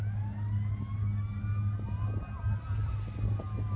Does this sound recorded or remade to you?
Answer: recorded